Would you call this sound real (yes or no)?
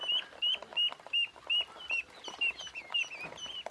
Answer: yes